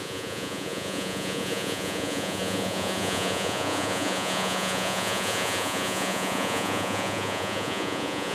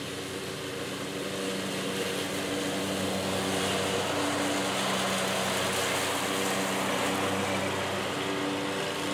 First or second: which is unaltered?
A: second